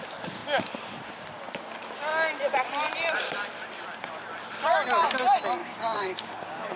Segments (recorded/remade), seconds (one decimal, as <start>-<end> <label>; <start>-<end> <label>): 0.0-5.6 recorded; 5.6-6.8 remade